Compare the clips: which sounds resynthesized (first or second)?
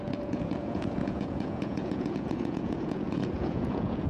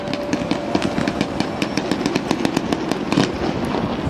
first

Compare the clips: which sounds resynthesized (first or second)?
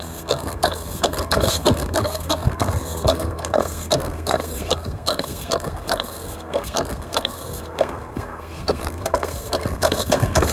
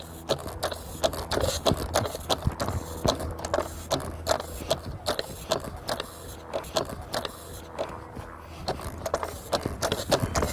first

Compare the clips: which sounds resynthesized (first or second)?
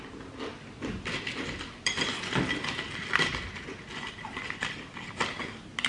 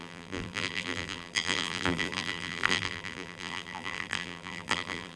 second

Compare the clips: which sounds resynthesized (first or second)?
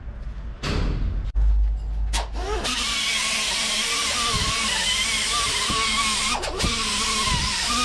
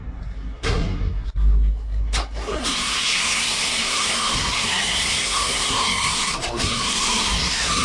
second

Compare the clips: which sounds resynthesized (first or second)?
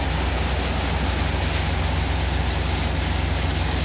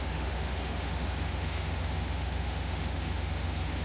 second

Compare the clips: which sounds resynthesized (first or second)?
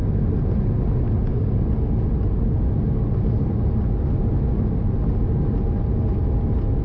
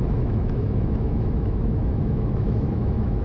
second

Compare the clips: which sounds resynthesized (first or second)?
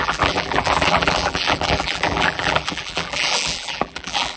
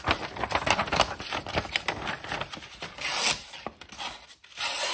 first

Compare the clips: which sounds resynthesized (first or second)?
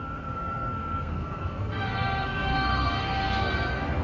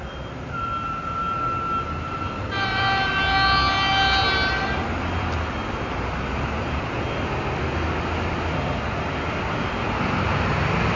first